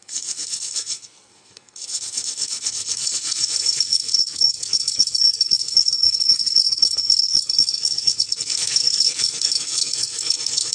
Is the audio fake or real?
fake